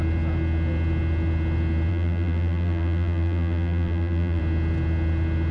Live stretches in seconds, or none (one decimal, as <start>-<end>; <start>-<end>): 0.0-1.9; 4.4-5.5